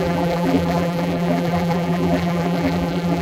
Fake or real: fake